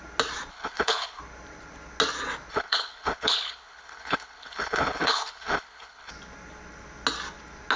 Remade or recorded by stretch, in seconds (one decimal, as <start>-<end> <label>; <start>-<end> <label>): 0.0-0.5 recorded; 0.5-1.2 remade; 1.2-2.5 recorded; 2.5-6.1 remade; 6.1-7.8 recorded